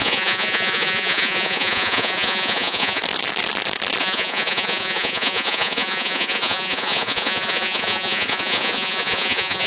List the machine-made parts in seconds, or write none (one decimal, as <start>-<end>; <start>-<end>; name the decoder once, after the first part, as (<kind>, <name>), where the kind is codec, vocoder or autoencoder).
0.0-3.0 (vocoder, Vocos); 4.0-9.7